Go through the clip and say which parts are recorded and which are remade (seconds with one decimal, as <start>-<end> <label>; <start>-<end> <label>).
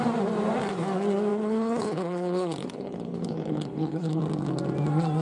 0.0-1.3 recorded; 1.3-4.2 remade; 4.2-5.2 recorded